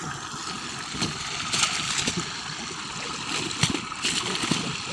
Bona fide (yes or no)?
yes